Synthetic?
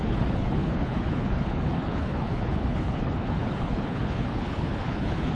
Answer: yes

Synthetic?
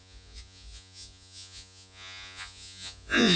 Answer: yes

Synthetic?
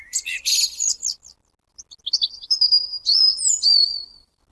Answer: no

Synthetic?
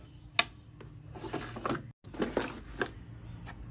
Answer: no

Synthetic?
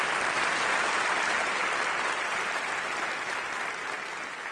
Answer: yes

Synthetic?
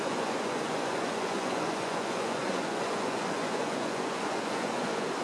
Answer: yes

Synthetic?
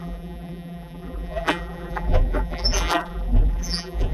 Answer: yes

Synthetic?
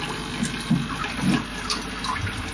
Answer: no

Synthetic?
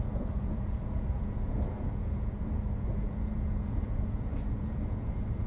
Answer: yes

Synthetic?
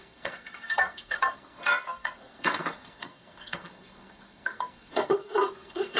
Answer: yes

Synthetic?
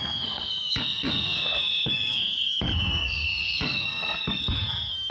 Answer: yes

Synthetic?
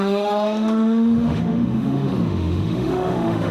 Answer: yes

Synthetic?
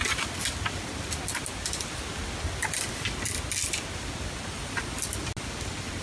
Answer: no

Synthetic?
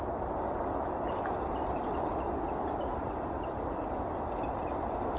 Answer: no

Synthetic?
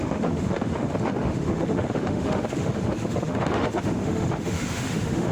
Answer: yes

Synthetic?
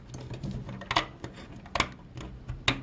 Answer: no